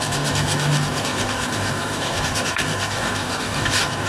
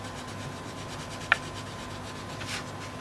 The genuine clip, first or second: second